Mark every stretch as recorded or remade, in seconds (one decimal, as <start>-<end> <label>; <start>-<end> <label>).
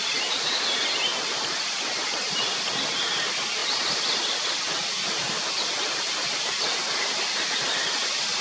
0.0-8.4 recorded